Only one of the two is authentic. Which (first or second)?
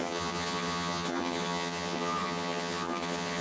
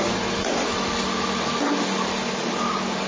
second